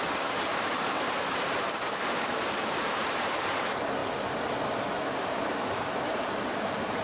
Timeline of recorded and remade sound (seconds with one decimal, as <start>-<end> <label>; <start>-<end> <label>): 0.0-4.0 remade; 4.0-5.0 recorded; 5.0-7.0 remade